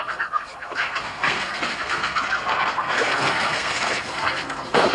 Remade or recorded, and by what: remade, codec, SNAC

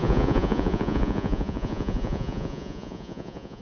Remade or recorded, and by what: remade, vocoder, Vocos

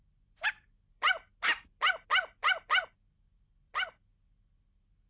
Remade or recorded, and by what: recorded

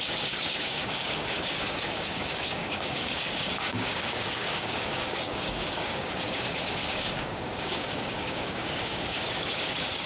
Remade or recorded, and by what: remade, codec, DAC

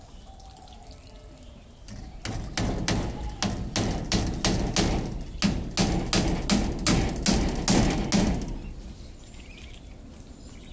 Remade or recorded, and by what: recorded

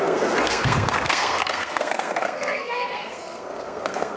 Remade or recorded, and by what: remade, codec, SNAC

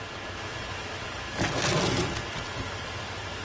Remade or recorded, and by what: recorded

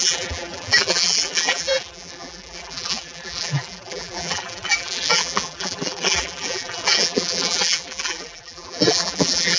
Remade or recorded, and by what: remade, vocoder, BigVGAN v2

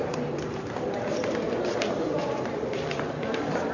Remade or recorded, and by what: remade, vocoder, BigVGAN v2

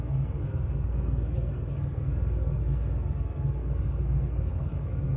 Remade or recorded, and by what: remade, codec, SNAC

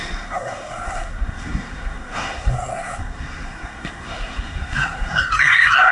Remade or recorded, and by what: remade, codec, SNAC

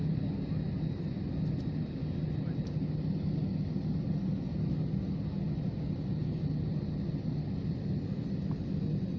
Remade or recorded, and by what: recorded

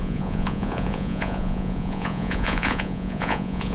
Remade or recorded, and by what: remade, vocoder, Vocos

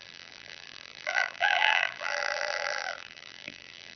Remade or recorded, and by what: remade, vocoder, BigVGAN v2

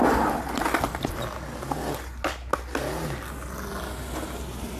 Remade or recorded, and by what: recorded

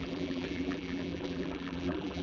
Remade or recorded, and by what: remade, vocoder, BigVGAN v2